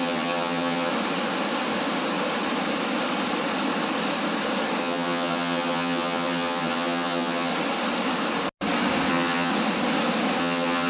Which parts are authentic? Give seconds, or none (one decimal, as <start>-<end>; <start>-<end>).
0.9-4.8; 7.5-9.1; 9.5-10.4